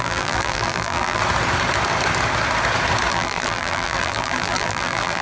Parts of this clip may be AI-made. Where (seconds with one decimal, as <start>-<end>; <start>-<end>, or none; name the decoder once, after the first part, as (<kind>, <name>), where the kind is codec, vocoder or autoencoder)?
0.0-1.2 (vocoder, BigVGAN v2); 3.1-5.2